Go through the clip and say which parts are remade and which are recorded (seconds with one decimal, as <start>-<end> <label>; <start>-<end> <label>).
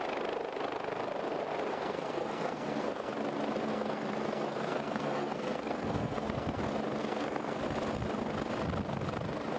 0.0-1.7 recorded; 1.7-3.1 remade; 3.1-3.7 recorded; 3.7-6.6 remade; 6.6-7.0 recorded; 7.0-7.6 remade; 7.6-9.6 recorded